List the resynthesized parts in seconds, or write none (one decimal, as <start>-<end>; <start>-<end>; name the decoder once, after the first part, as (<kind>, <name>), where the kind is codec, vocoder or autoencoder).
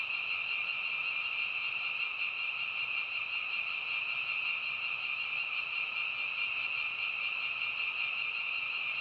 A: none